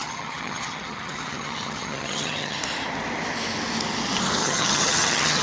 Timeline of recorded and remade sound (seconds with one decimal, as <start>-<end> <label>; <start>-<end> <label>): 0.0-2.6 remade; 2.6-4.4 recorded; 4.4-5.4 remade

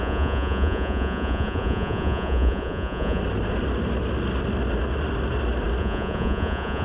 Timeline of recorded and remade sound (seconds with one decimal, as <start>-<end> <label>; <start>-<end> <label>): 0.0-3.2 remade; 3.2-5.8 recorded; 5.8-6.8 remade

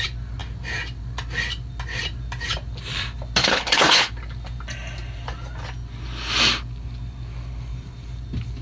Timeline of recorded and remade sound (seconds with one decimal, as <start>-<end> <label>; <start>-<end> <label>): 0.0-3.4 recorded; 3.4-4.1 remade; 4.1-8.6 recorded

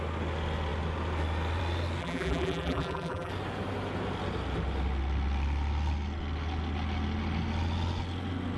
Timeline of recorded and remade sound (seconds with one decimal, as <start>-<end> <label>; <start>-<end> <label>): 0.0-2.0 recorded; 2.0-3.3 remade; 3.3-8.6 recorded

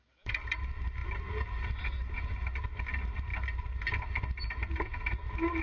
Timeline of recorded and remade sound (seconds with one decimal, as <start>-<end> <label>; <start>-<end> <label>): 0.0-5.6 recorded

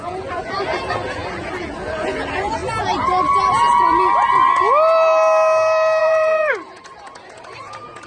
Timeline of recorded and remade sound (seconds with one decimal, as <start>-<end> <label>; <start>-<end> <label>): 0.0-2.6 remade; 2.6-6.0 recorded; 6.0-8.1 remade